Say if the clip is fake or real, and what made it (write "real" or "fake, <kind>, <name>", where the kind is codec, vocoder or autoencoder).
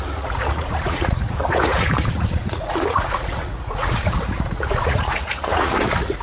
fake, vocoder, Vocos